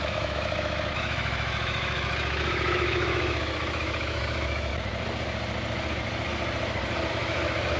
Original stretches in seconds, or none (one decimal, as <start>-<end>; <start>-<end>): 4.7-7.1

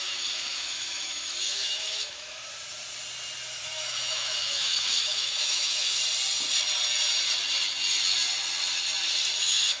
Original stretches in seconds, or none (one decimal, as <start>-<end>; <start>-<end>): 2.5-3.6; 6.0-9.4

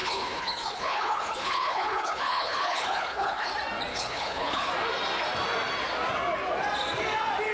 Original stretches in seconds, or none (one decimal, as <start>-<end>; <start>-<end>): 3.5-3.9; 4.7-7.5

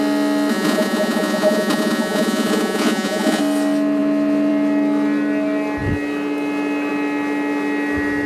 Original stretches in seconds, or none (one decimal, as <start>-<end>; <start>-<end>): 0.0-0.5; 3.4-8.3

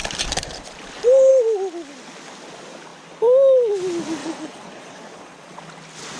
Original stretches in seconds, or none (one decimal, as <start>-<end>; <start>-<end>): 0.0-4.2; 5.6-6.2